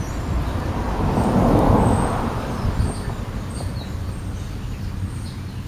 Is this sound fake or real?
real